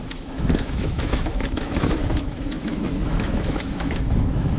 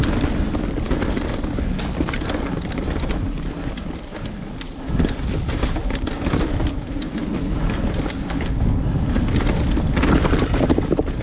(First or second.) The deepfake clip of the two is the first